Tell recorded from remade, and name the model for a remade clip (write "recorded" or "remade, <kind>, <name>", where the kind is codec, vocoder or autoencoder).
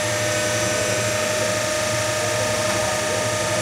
recorded